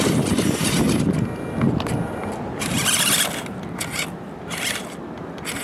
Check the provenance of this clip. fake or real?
real